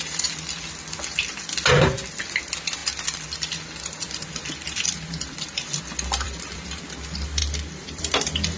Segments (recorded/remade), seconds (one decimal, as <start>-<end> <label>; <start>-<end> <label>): 0.0-2.8 recorded; 2.8-6.8 remade; 6.8-7.4 recorded; 7.4-8.0 remade; 8.0-8.6 recorded